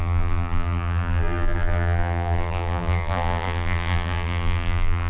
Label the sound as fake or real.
fake